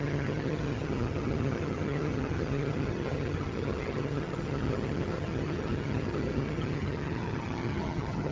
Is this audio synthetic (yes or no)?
yes